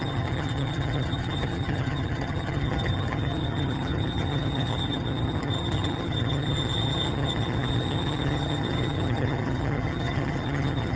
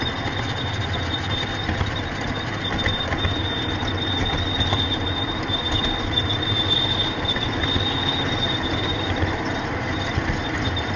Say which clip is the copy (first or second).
first